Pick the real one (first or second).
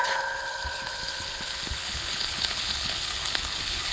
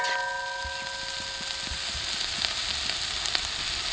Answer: second